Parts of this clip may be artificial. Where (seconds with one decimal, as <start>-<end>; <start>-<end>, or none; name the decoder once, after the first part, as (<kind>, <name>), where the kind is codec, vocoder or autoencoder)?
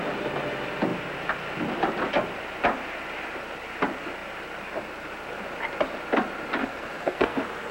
6.6-7.7 (codec, SNAC)